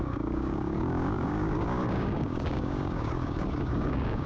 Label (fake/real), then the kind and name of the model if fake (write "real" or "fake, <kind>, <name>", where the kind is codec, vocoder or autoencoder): fake, codec, DAC